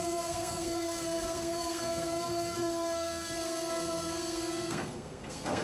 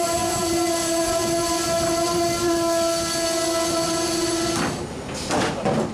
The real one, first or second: second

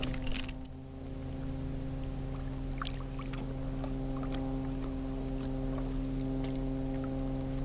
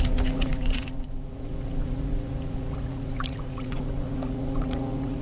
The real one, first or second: first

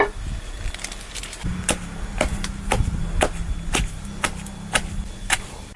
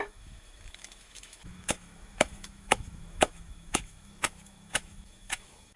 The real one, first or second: first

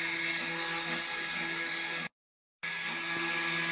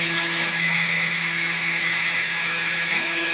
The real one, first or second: first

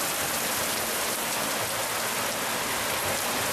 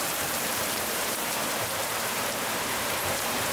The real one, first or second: first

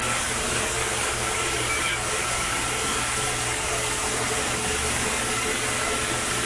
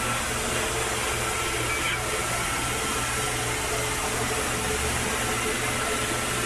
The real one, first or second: second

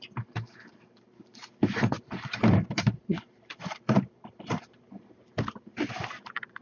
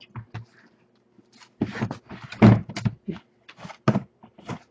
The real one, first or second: second